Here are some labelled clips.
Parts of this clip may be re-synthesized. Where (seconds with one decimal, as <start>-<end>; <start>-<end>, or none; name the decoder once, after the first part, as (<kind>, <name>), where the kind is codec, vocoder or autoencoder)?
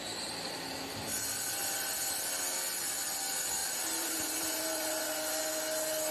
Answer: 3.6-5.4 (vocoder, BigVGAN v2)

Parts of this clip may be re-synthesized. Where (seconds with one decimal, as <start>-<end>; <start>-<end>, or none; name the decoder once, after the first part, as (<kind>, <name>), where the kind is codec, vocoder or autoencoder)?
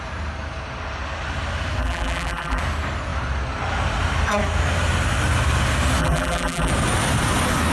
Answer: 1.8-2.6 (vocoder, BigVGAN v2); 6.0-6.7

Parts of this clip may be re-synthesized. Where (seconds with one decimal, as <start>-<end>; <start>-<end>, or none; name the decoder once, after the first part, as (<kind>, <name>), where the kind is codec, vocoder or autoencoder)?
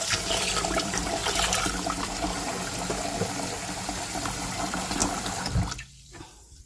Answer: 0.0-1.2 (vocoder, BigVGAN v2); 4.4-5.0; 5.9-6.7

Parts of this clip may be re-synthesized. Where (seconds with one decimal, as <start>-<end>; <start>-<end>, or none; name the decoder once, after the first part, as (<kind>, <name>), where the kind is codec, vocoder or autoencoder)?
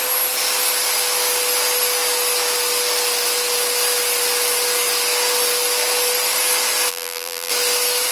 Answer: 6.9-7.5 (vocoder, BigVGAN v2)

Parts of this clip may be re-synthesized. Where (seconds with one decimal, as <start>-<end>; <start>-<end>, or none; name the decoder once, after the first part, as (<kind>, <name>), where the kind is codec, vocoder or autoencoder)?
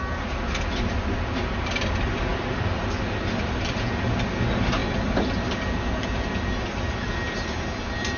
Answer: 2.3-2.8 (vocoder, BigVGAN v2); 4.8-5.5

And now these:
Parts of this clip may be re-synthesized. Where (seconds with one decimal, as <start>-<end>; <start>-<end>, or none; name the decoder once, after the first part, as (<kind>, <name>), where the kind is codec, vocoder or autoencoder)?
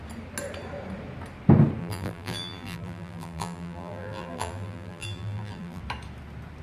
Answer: 1.8-5.8 (vocoder, BigVGAN v2)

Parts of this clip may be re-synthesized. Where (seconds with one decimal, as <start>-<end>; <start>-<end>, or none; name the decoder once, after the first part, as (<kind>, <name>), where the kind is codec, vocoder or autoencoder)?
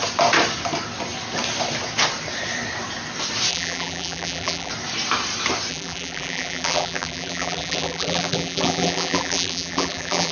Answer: 3.5-4.7 (vocoder, BigVGAN v2); 5.7-10.3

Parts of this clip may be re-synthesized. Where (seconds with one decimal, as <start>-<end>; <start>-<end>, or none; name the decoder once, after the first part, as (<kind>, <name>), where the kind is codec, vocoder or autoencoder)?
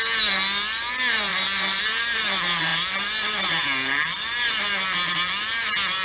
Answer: 1.3-1.8 (vocoder, BigVGAN v2)